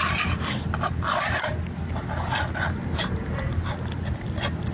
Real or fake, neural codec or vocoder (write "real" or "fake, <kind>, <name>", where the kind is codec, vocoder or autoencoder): real